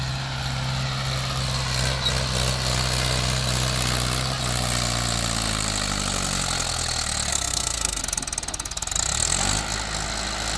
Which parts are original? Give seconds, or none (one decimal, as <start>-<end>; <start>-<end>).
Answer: 0.0-7.3; 8.0-10.6